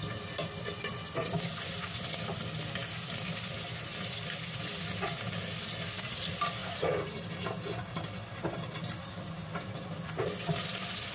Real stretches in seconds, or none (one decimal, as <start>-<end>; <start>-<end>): 0.0-11.1